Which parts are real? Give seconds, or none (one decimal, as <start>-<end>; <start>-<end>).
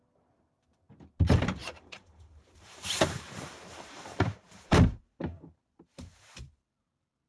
0.0-1.6; 5.0-7.3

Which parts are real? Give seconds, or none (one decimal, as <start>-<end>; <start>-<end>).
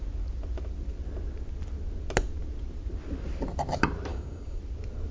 0.0-4.1; 4.6-5.1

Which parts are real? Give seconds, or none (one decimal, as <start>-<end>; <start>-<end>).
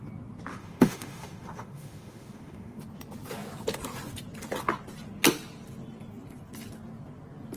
0.0-0.5; 2.8-7.6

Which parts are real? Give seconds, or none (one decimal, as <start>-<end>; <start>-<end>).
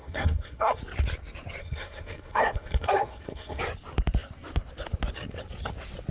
0.8-1.6; 3.6-6.1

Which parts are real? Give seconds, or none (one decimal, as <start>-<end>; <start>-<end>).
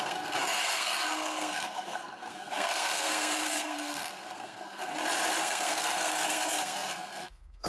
4.9-5.4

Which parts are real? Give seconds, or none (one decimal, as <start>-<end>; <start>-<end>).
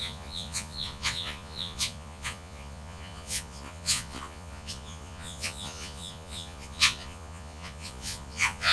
none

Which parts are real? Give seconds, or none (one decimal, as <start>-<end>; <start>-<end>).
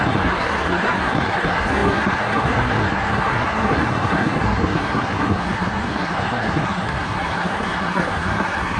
none